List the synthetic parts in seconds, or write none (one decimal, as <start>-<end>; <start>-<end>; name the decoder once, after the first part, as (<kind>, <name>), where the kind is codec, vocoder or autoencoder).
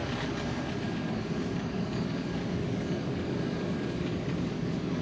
0.0-5.0 (codec, DAC)